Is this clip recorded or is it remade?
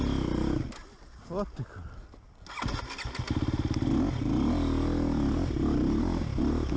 recorded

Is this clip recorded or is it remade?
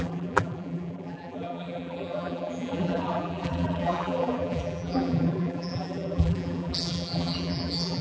remade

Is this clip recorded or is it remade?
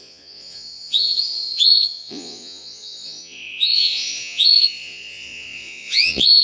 remade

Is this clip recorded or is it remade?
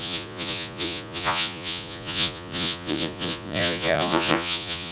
remade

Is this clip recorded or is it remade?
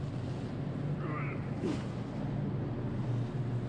recorded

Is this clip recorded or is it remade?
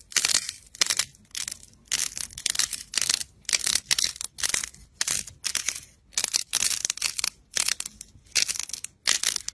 recorded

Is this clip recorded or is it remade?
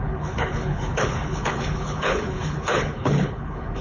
remade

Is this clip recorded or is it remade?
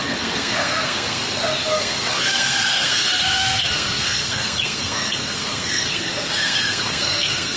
remade